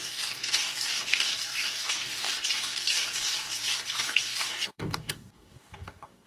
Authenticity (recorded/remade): remade